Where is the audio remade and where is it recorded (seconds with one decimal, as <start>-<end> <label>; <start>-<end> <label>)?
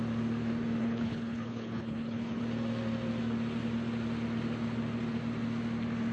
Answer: 0.0-0.8 recorded; 0.8-2.4 remade; 2.4-6.1 recorded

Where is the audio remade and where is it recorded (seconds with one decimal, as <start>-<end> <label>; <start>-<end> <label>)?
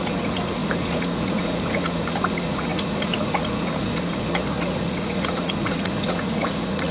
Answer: 0.0-6.9 remade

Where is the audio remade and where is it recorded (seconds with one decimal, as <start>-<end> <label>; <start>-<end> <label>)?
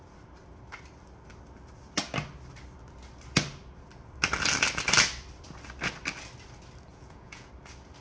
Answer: 0.0-6.9 recorded; 6.9-7.5 remade; 7.5-8.0 recorded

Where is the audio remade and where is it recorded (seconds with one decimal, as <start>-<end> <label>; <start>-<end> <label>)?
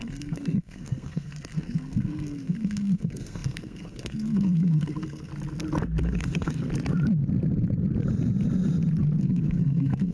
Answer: 0.0-5.3 remade; 5.3-6.0 recorded; 6.0-6.7 remade; 6.7-9.2 recorded; 9.2-10.1 remade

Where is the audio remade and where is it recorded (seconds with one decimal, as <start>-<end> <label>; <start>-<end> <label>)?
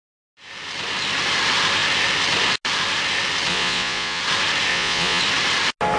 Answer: 0.0-3.5 recorded; 3.5-4.2 remade; 4.2-4.7 recorded; 4.7-5.2 remade; 5.2-6.0 recorded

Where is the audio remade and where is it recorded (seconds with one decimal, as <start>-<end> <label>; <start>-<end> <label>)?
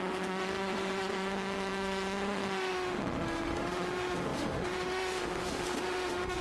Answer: 0.0-6.4 remade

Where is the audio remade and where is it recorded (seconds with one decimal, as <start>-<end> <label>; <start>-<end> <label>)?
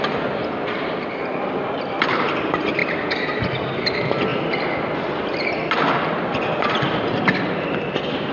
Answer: 0.0-8.3 recorded